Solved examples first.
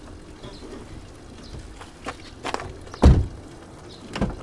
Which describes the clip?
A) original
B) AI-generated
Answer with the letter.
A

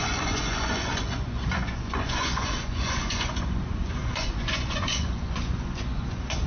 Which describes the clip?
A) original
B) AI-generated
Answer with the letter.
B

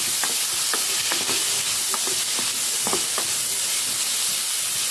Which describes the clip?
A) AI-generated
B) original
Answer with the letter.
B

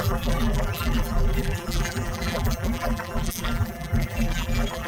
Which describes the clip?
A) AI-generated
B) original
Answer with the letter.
A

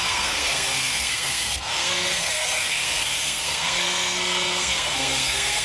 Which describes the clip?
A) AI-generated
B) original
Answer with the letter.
A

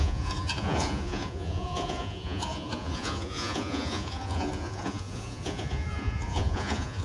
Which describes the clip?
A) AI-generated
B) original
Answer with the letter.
A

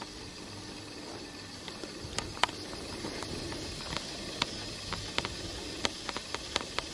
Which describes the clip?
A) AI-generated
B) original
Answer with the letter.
B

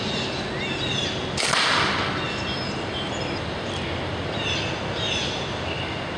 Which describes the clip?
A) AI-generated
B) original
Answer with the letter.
B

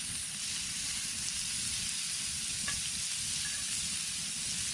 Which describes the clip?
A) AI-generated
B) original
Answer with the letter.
B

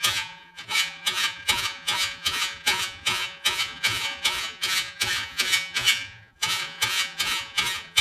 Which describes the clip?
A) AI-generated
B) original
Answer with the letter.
A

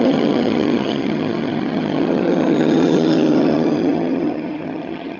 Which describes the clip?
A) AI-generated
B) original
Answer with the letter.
A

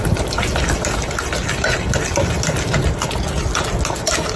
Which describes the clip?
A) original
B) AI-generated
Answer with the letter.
A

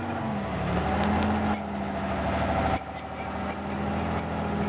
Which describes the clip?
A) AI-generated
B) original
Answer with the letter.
B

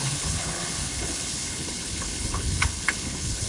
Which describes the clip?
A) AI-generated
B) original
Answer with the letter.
A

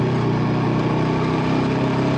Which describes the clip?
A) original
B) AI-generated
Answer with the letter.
A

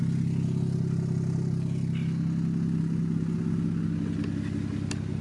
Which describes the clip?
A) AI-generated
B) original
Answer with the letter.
B